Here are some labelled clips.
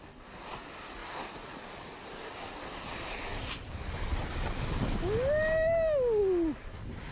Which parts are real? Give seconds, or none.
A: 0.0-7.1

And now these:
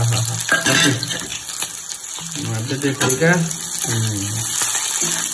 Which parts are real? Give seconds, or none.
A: 0.0-5.3

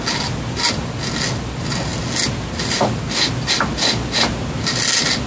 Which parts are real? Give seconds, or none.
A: 0.0-5.3

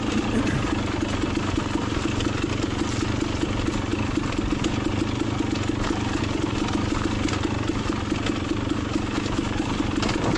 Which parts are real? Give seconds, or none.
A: 0.0-10.4

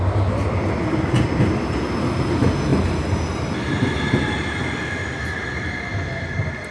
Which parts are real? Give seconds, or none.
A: 0.0-6.7